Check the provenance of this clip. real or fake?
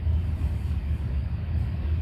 fake